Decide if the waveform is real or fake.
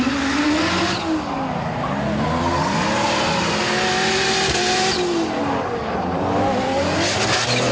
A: real